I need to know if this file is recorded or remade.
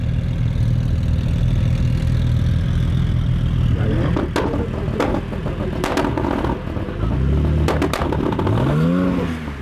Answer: recorded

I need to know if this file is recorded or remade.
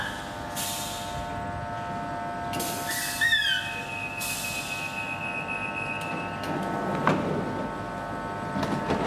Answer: recorded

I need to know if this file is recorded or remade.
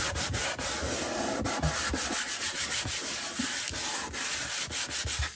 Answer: recorded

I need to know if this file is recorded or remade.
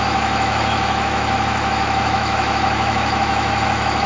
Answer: remade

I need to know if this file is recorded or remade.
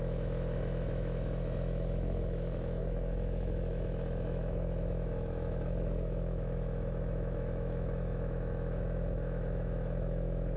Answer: remade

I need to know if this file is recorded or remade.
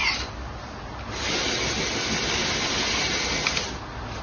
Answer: recorded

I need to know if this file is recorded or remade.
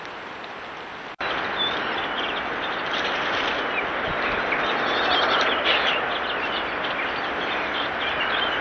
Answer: recorded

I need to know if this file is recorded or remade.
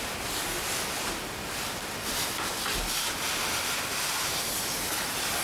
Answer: recorded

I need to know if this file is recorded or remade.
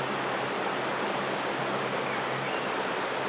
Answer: recorded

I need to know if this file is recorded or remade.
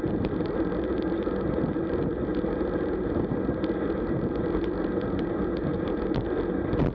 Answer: recorded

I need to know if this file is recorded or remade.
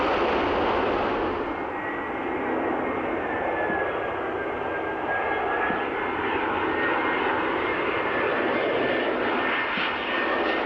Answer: recorded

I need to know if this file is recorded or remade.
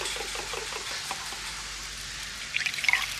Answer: recorded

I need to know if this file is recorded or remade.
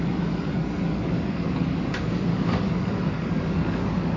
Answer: remade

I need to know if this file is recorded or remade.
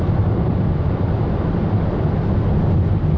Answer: recorded